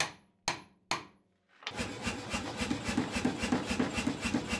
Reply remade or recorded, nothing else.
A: recorded